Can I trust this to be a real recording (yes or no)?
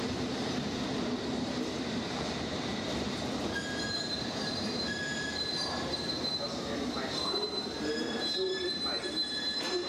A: no